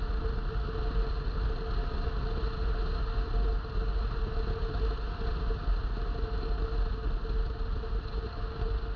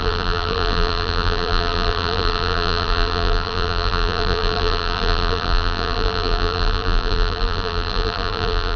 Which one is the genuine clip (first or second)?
first